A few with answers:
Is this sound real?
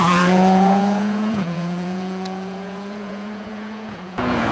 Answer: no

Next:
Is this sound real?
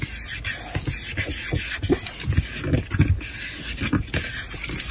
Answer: yes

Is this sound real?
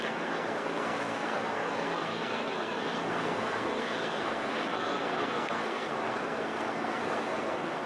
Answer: no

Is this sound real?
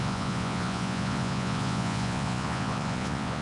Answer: no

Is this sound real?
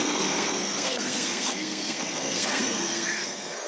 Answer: no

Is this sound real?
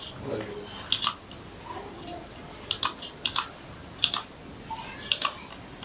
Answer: yes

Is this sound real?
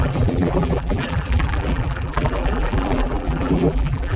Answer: no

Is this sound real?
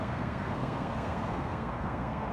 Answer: no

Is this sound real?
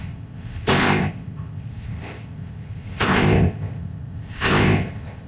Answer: no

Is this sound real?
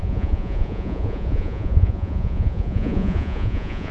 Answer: no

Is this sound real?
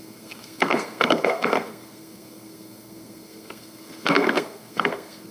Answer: no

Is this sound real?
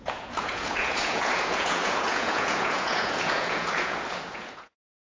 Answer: no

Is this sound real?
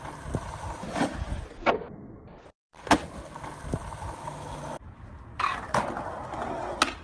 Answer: yes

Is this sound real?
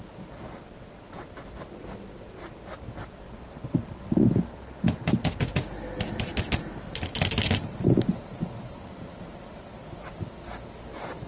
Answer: yes